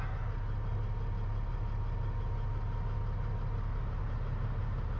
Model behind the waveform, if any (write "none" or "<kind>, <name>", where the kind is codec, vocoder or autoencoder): none